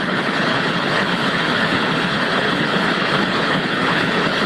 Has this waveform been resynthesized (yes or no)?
yes